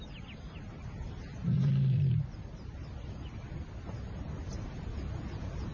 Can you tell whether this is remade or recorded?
recorded